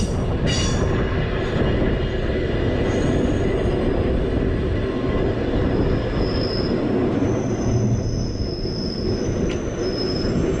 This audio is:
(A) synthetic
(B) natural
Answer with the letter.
B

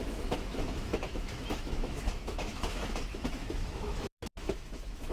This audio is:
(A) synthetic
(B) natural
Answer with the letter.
A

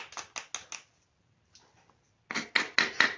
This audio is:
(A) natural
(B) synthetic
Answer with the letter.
A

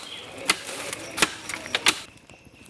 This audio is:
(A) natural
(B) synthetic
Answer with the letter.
A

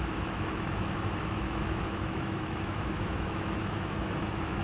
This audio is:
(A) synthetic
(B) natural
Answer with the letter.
A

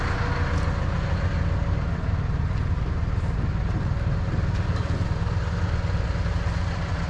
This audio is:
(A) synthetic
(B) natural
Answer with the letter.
B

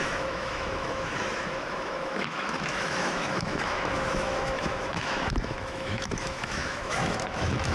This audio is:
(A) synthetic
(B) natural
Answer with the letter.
A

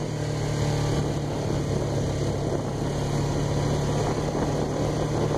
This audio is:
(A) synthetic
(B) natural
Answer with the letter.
B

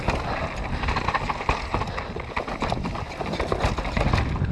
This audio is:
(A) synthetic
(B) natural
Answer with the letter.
B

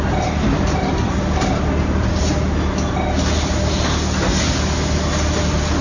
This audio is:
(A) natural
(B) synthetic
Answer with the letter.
A